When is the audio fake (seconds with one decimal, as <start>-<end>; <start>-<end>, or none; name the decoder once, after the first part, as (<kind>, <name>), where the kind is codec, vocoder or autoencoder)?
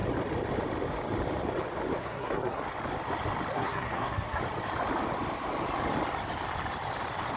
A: 2.0-2.6 (codec, SNAC); 3.5-4.4